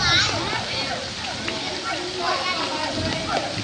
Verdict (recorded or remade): recorded